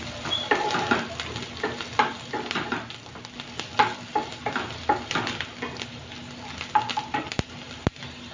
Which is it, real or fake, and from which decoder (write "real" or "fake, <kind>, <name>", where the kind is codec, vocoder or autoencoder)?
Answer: real